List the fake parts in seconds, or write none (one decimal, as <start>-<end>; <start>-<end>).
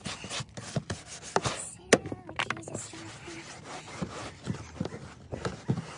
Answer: none